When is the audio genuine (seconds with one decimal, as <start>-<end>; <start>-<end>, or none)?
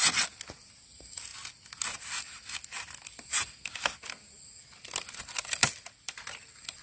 0.0-5.6